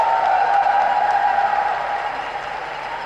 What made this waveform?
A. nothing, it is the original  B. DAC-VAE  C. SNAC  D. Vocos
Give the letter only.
A